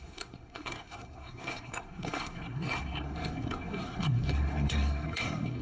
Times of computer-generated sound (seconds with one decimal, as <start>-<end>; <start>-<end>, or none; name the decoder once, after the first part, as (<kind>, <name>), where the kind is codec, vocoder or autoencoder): 0.0-5.6 (codec, SNAC)